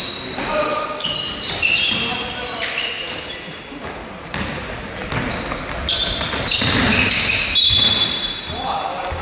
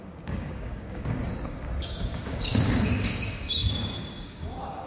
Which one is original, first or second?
first